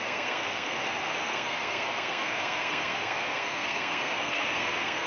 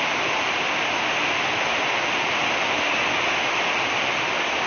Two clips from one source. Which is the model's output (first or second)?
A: first